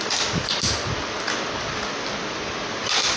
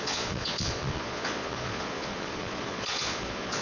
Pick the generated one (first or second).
second